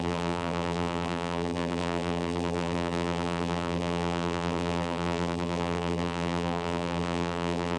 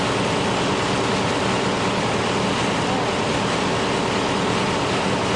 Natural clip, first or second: second